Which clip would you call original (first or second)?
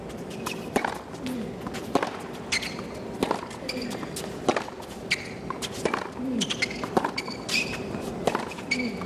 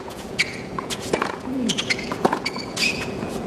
first